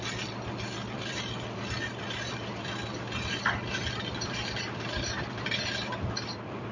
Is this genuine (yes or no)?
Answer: no